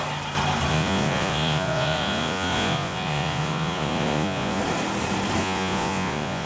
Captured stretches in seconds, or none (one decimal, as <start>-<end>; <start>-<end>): 0.0-0.7; 4.6-5.4